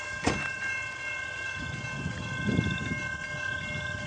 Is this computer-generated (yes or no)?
no